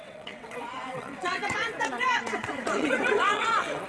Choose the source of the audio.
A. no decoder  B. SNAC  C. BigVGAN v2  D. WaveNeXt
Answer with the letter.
D